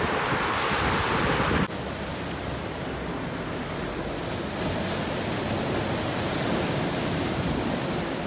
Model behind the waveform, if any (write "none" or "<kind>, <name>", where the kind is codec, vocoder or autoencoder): none